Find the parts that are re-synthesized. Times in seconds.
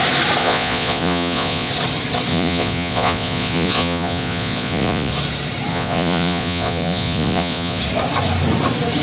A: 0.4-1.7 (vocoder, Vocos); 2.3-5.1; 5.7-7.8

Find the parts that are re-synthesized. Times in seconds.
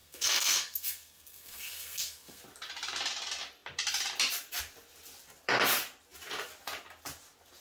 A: 0.0-2.4 (codec, SNAC)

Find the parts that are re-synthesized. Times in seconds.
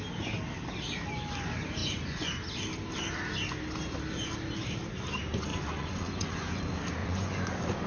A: 1.8-2.3 (vocoder, Vocos); 5.5-6.6; 7.0-7.5